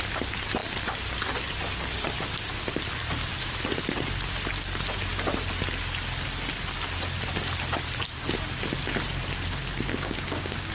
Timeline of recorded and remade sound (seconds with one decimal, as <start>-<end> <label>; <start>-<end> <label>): 0.0-9.9 recorded; 9.9-10.7 remade